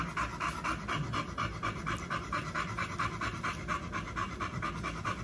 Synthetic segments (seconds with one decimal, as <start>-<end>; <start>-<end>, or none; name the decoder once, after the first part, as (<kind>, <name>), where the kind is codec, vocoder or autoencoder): 0.0-3.0 (vocoder, BigVGAN v2); 4.2-5.2